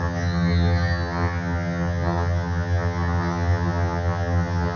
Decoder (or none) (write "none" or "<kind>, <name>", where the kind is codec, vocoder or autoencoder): vocoder, HiFi-GAN